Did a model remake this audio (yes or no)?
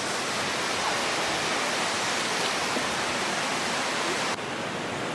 no